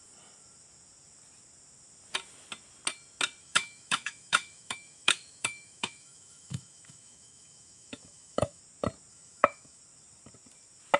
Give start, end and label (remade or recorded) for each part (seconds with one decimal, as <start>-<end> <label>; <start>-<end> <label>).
0.0-3.4 recorded; 3.4-8.6 remade; 8.6-9.1 recorded; 9.1-9.8 remade; 9.8-11.0 recorded